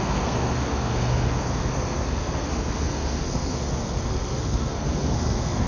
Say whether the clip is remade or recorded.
remade